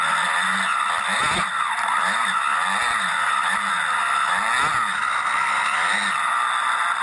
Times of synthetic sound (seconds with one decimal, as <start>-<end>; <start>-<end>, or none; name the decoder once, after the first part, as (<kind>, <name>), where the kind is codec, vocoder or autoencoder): 0.7-3.7 (vocoder, BigVGAN v2)